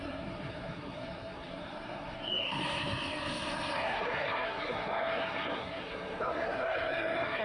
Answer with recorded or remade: remade